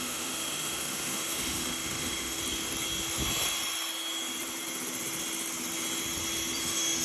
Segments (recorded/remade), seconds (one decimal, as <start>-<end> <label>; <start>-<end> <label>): 0.0-2.4 remade; 2.4-6.6 recorded; 6.6-7.0 remade